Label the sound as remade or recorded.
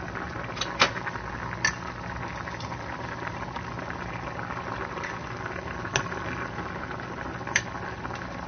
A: recorded